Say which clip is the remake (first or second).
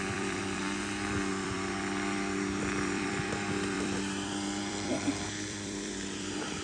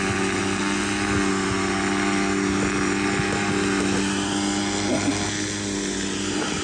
first